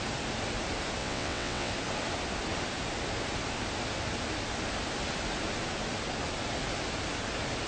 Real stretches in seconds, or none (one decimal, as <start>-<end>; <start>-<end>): 0.0-1.0; 1.7-7.7